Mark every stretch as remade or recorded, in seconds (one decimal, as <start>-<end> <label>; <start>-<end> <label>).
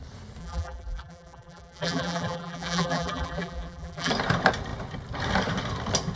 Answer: 0.0-0.4 recorded; 0.4-4.1 remade; 4.1-6.2 recorded